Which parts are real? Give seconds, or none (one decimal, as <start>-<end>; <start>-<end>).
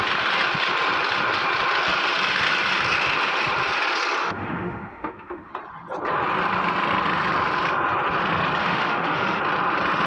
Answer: 0.0-4.2; 5.5-8.6; 9.4-10.1